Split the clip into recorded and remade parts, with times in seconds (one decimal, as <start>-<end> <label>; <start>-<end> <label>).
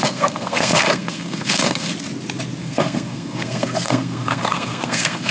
0.0-1.9 remade; 1.9-2.6 recorded; 2.6-5.3 remade